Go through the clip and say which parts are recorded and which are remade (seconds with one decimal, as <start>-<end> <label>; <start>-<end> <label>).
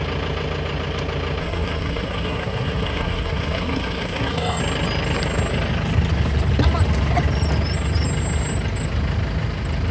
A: 0.0-1.4 recorded; 1.4-4.6 remade; 4.6-9.9 recorded